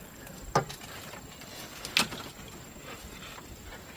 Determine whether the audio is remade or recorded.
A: recorded